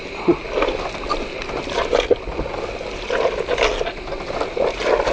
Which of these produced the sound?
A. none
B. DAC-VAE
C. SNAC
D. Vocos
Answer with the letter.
A